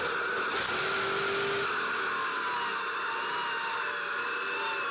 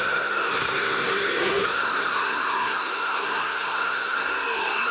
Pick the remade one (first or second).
second